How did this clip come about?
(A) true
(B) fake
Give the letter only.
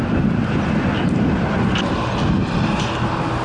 A